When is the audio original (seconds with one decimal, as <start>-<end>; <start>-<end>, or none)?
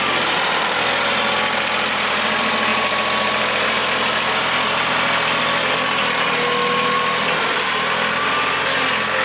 0.0-9.2